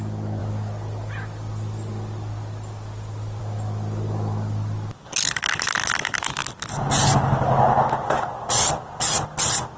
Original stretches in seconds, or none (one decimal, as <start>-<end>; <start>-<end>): 0.0-9.8